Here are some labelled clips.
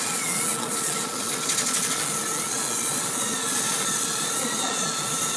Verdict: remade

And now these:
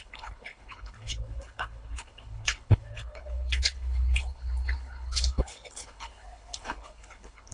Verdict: remade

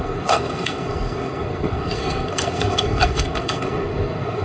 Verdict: remade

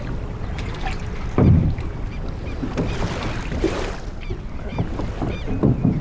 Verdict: recorded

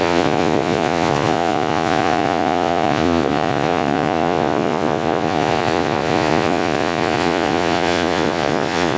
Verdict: remade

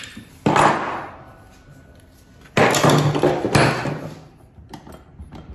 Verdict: recorded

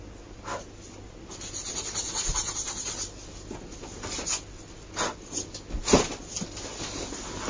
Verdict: recorded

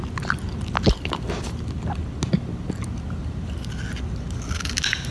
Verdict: recorded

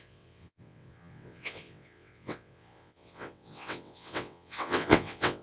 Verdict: remade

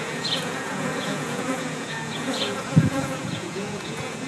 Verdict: remade